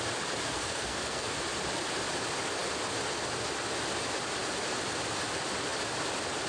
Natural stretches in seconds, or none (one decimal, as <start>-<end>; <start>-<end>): 0.0-0.5; 1.3-6.5